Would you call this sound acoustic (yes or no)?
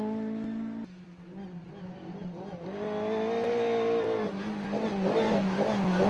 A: yes